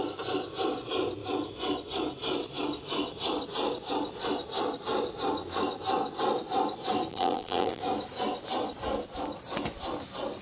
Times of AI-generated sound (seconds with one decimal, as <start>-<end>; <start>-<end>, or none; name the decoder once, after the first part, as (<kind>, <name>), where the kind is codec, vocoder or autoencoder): 7.1-7.8 (vocoder, BigVGAN v2)